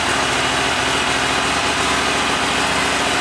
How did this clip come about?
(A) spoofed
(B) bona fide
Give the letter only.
B